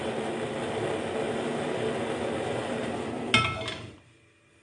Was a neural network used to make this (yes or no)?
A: no